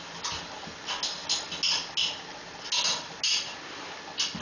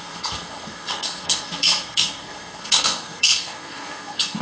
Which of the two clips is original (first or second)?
first